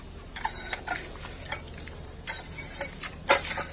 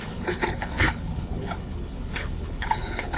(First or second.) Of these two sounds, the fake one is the second